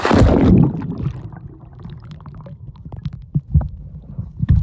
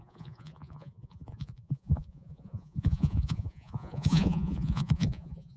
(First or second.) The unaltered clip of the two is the first